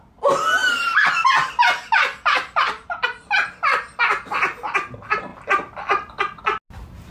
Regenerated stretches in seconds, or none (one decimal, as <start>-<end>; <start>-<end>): 0.6-1.1; 5.3-6.4